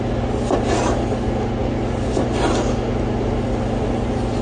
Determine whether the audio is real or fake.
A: real